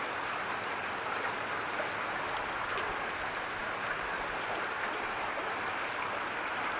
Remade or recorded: recorded